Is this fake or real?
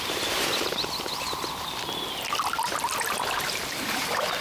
real